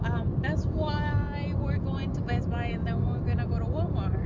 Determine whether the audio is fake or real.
real